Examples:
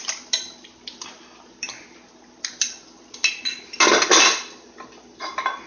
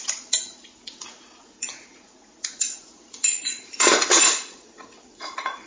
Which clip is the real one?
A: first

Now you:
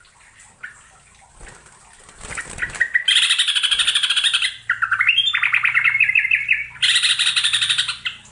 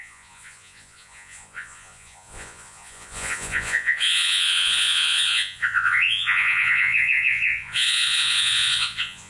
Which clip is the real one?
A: first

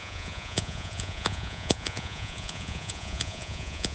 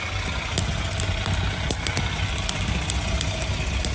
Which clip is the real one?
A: second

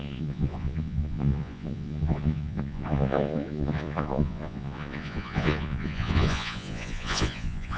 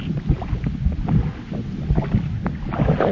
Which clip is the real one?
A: second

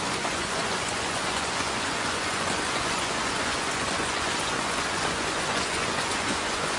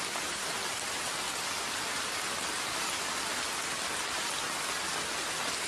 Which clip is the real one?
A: second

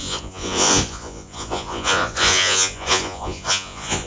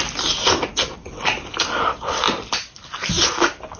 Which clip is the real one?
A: second